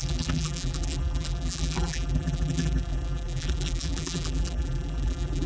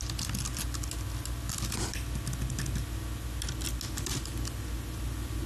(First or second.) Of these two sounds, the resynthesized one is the first